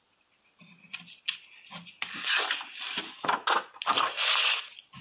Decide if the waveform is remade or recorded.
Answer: recorded